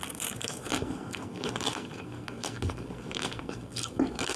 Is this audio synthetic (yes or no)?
yes